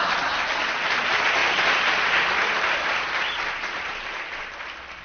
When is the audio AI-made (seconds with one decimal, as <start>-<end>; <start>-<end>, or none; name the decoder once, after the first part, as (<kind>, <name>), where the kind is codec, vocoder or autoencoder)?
none

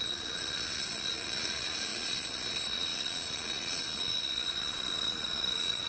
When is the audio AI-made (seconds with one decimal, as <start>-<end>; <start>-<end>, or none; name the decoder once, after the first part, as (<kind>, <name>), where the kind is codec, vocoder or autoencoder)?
0.0-5.9 (vocoder, Vocos)

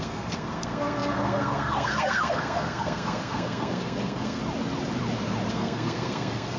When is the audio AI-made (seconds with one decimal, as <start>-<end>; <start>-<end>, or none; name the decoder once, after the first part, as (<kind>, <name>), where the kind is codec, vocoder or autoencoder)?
0.0-4.4 (codec, SNAC); 5.5-6.6

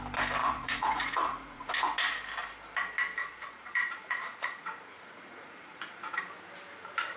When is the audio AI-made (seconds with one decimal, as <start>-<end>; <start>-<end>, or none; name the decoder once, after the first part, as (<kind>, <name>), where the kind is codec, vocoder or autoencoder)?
0.4-1.7 (vocoder, Vocos); 3.2-6.2

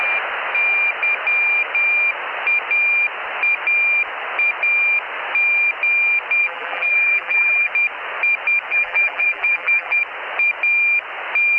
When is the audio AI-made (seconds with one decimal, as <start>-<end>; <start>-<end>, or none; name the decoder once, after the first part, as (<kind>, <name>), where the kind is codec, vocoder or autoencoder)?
6.4-7.7 (vocoder, BigVGAN v2); 8.7-10.0

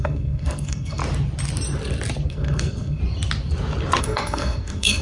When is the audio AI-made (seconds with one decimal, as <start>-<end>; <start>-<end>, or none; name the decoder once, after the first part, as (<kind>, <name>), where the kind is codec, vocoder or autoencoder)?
0.0-1.0 (codec, SNAC); 2.3-3.0; 4.0-5.0

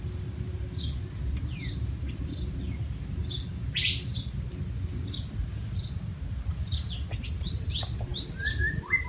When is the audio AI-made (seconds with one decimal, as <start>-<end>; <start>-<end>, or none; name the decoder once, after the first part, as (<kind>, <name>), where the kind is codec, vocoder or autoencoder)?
none

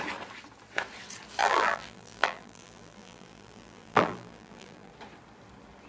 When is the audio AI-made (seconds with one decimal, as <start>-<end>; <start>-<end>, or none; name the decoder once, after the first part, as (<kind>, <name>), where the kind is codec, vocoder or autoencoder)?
1.4-4.9 (vocoder, BigVGAN v2)